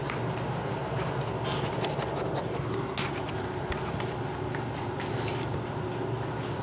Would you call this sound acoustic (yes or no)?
yes